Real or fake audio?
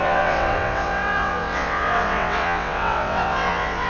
fake